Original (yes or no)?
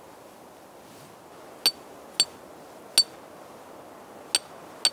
yes